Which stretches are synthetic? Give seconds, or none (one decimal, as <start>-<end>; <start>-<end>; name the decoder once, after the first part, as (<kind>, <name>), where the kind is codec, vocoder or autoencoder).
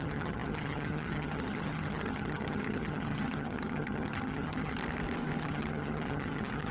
0.0-4.8 (vocoder, HiFi-GAN); 5.4-6.7